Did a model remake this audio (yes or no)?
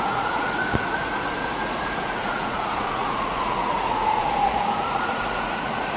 yes